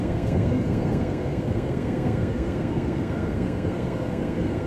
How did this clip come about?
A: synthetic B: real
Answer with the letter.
A